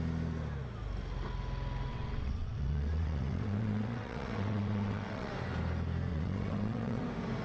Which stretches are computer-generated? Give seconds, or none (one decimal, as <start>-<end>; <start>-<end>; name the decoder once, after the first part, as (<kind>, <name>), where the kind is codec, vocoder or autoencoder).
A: 1.9-5.3 (vocoder, WaveNeXt); 6.1-7.0